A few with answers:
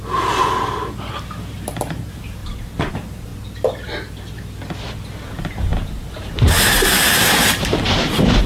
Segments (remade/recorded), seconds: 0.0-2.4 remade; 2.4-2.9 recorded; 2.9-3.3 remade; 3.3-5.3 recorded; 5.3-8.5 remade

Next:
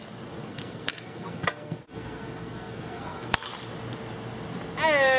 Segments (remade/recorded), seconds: 0.0-0.4 recorded; 0.4-3.5 remade; 3.5-5.2 recorded

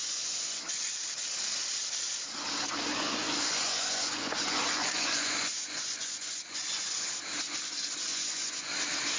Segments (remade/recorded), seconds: 0.0-0.6 remade; 0.6-2.9 recorded; 2.9-7.1 remade; 7.1-8.1 recorded; 8.1-8.7 remade; 8.7-9.2 recorded

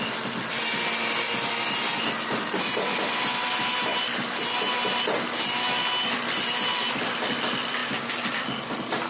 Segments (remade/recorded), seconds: 0.0-9.1 recorded

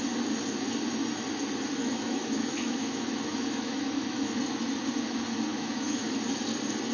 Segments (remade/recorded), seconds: 0.0-1.8 recorded; 1.8-4.4 remade; 4.4-5.5 recorded; 5.5-6.1 remade; 6.1-6.9 recorded

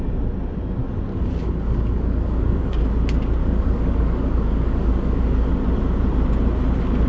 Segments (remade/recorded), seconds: 0.0-1.1 recorded; 1.1-2.8 remade; 2.8-3.4 recorded; 3.4-5.5 remade; 5.5-7.1 recorded

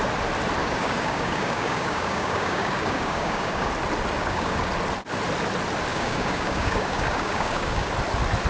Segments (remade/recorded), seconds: 0.0-0.6 recorded; 0.6-3.7 remade; 3.7-4.2 recorded; 4.2-4.7 remade; 4.7-5.9 recorded; 5.9-7.9 remade; 7.9-8.5 recorded

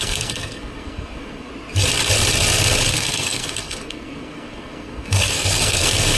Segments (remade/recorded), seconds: 0.0-1.5 remade; 1.5-2.9 recorded; 2.9-6.2 remade